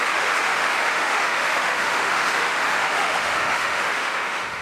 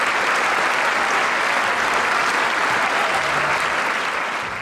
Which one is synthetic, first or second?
first